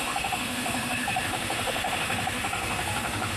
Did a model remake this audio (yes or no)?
yes